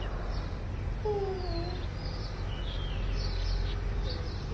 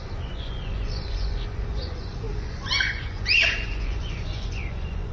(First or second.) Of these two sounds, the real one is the first